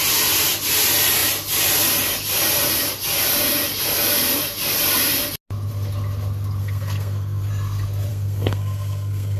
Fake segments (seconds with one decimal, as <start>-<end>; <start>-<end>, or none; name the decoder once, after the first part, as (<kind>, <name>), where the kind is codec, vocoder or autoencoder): 6.6-7.5 (codec, SNAC); 8.1-9.4